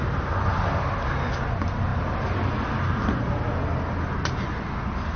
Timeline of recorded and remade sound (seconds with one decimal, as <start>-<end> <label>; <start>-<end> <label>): 0.0-5.2 recorded

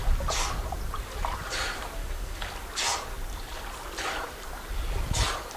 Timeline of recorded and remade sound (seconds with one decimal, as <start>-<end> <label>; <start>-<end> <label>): 0.0-2.0 recorded; 2.0-2.5 remade; 2.5-5.6 recorded

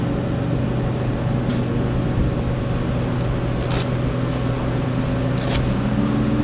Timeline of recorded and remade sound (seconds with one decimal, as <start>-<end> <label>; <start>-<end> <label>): 0.0-6.4 recorded

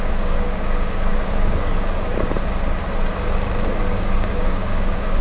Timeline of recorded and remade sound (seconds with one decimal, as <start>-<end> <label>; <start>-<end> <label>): 0.0-2.1 remade; 2.1-3.8 recorded; 3.8-5.2 remade